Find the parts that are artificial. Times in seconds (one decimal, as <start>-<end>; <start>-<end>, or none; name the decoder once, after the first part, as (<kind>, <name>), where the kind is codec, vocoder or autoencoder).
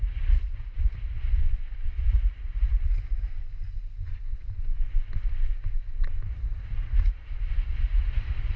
0.0-1.4 (vocoder, Vocos); 1.9-3.3; 6.3-8.6